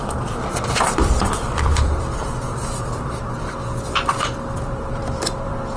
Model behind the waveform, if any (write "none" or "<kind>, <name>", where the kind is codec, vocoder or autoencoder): vocoder, BigVGAN v2